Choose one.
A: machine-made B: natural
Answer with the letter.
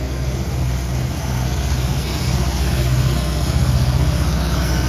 A